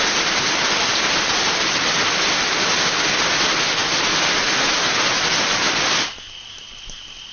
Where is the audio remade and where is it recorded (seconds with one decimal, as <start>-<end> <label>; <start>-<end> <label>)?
0.0-7.3 recorded